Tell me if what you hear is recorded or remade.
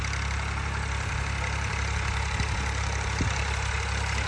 recorded